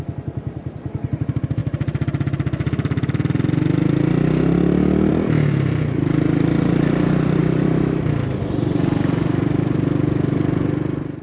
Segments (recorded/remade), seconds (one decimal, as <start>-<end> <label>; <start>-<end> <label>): 0.0-11.2 recorded